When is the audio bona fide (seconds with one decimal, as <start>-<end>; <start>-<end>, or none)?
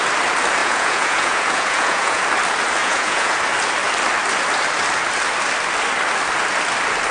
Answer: 0.0-0.6; 2.2-2.8; 3.4-7.1